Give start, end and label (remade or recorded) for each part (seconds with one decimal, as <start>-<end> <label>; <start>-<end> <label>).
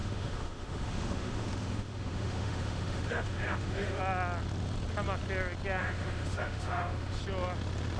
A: 0.0-4.0 remade; 4.0-5.8 recorded; 5.8-7.2 remade; 7.2-8.0 recorded